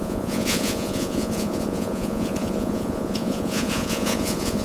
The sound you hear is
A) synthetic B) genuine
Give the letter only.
A